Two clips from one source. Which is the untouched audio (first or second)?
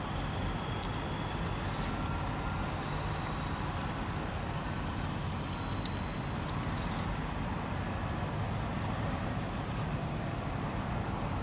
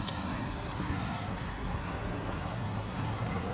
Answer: first